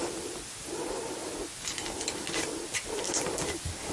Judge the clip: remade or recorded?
recorded